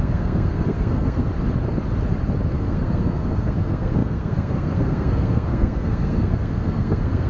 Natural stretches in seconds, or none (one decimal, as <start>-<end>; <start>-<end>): 1.3-2.5